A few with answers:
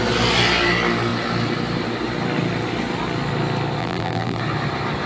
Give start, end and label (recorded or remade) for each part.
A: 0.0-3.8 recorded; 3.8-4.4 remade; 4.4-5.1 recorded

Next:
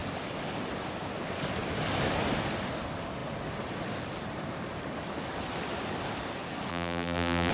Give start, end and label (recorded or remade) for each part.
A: 0.0-6.7 recorded; 6.7-7.5 remade